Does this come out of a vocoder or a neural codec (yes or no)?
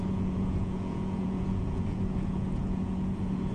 yes